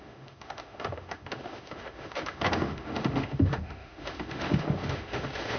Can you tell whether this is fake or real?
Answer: fake